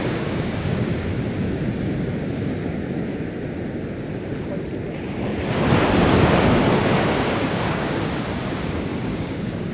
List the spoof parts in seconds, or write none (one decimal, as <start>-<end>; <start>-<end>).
0.0-1.1; 6.1-9.7